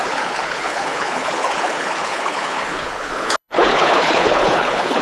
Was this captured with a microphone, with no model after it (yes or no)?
no